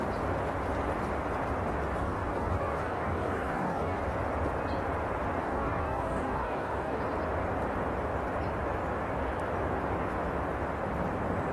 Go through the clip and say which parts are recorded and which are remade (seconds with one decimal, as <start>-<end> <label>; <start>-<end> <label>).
0.0-2.0 recorded; 2.0-4.0 remade; 4.0-5.4 recorded; 5.4-7.0 remade; 7.0-11.5 recorded